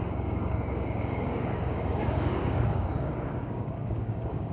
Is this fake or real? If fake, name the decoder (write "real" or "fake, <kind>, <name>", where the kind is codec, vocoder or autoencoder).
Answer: fake, codec, DAC